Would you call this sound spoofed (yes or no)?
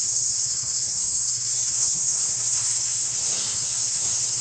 yes